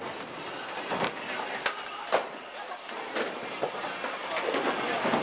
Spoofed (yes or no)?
no